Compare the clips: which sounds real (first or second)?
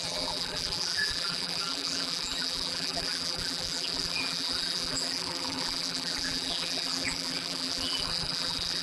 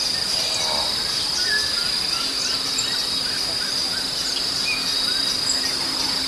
second